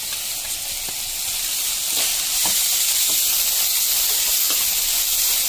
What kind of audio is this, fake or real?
real